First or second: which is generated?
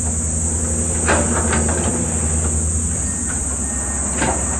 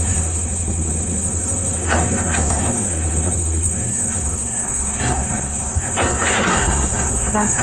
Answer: second